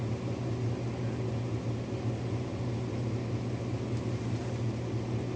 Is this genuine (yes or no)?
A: yes